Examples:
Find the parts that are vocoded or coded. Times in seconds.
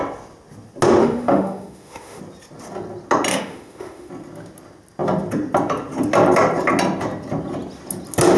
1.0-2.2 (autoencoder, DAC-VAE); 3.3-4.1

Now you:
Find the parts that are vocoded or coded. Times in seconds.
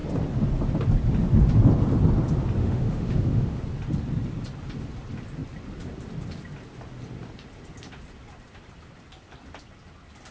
2.6-3.6 (autoencoder, DAC-VAE)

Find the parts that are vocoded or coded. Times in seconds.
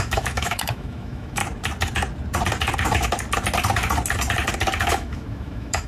0.0-1.4 (autoencoder, DAC-VAE); 4.9-5.9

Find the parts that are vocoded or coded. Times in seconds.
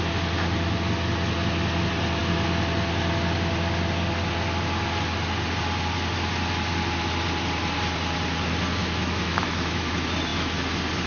8.8-9.9 (autoencoder, DAC-VAE)